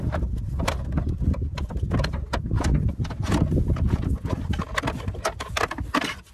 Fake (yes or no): no